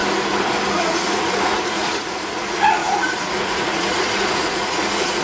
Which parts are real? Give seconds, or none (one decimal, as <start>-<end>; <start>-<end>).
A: 0.0-0.7